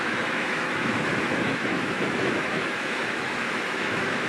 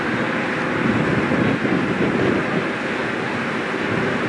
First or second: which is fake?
first